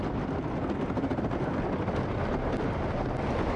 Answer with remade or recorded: recorded